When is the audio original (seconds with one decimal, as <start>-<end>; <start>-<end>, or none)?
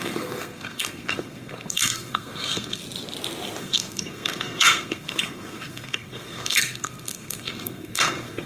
2.8-3.6